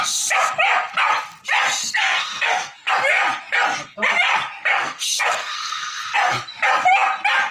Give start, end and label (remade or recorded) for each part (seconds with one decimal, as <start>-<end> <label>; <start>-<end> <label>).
0.0-1.8 recorded; 1.8-2.9 remade; 2.9-4.7 recorded; 4.7-6.0 remade; 6.0-7.5 recorded